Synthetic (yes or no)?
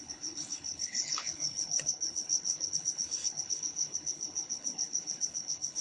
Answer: yes